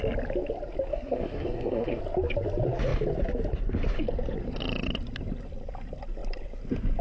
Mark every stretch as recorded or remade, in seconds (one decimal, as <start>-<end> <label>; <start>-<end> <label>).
0.0-0.9 recorded; 0.9-2.0 remade; 2.0-7.0 recorded